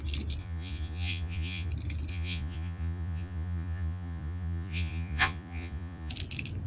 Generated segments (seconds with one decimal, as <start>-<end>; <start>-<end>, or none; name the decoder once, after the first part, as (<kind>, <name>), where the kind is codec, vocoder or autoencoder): 0.4-1.7 (vocoder, Vocos); 2.1-6.1